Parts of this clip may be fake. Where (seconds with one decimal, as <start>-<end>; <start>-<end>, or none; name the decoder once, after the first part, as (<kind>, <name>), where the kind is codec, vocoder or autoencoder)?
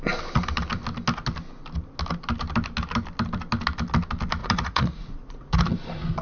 4.4-5.7 (vocoder, Vocos)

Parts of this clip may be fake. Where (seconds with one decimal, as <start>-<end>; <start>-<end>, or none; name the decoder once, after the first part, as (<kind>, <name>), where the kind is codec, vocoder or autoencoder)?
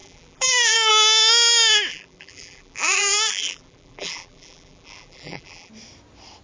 0.0-0.9 (vocoder, BigVGAN v2); 1.9-5.7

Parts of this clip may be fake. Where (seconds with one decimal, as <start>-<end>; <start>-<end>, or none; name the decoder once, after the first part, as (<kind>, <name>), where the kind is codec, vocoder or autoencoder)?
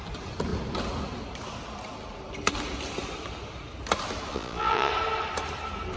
4.3-4.9 (vocoder, Vocos)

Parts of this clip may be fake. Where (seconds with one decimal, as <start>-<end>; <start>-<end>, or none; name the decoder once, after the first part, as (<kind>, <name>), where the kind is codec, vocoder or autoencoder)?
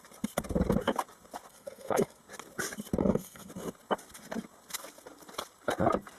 1.5-2.2 (codec, SNAC); 3.0-3.5